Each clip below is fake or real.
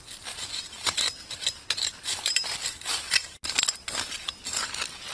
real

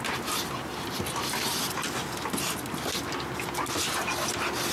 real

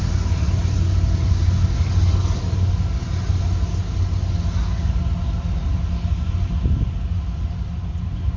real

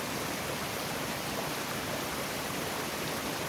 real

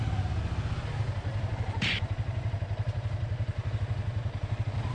real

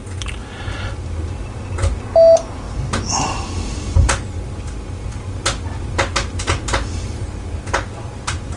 real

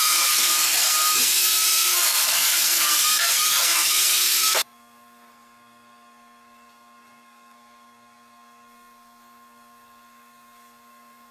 fake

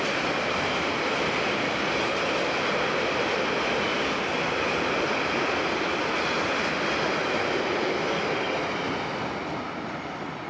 real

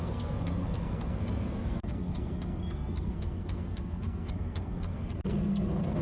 fake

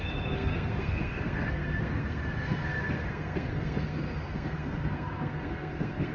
fake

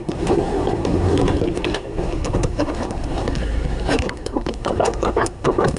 fake